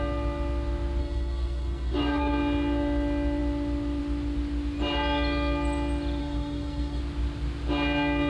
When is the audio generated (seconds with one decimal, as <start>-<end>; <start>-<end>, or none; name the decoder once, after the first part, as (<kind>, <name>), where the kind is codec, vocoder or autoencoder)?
1.0-2.3 (codec, SNAC); 6.2-7.0